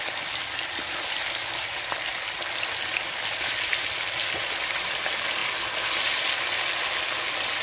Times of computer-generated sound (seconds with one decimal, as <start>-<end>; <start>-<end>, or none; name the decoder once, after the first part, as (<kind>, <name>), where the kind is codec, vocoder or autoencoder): none